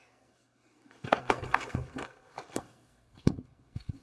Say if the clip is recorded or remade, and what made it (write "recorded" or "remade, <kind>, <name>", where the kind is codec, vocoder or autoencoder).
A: remade, codec, SNAC